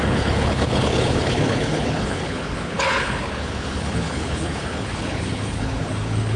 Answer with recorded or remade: remade